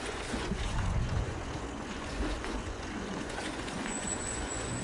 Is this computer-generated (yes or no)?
yes